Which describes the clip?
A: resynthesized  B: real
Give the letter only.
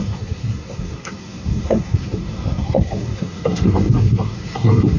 A